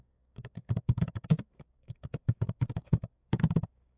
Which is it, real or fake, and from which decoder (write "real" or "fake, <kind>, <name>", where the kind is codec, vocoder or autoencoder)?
fake, codec, DAC